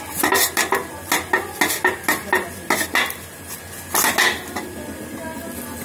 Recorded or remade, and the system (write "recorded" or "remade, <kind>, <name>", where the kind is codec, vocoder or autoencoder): recorded